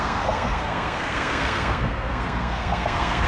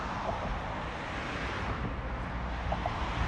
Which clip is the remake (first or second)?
first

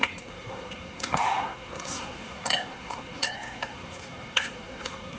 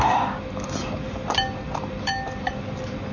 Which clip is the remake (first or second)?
first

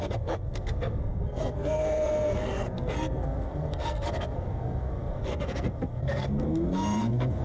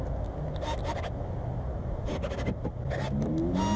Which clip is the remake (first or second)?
first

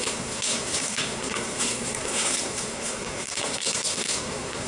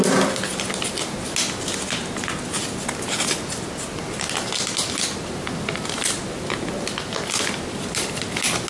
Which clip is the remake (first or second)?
first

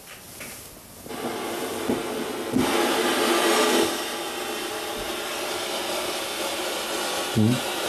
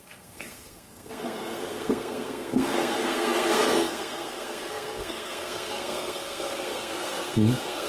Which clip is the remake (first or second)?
second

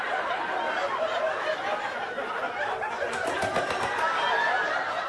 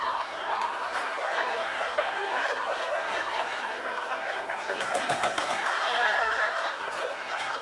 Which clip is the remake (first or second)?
second